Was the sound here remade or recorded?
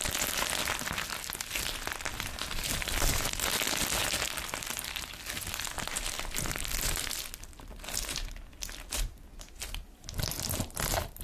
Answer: recorded